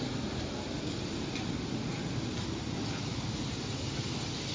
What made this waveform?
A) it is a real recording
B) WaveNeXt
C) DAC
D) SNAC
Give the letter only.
A